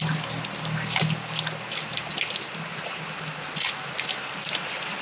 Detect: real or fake real